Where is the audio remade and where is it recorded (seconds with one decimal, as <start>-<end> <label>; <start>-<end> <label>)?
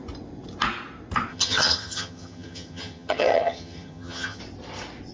0.0-1.3 recorded; 1.3-4.4 remade; 4.4-5.1 recorded